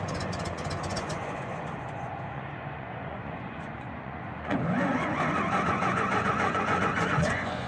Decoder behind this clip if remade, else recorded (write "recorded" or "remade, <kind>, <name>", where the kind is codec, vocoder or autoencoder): remade, vocoder, Vocos